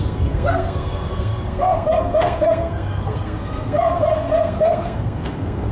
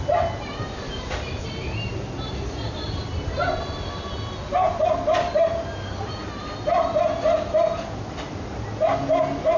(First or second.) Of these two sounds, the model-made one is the first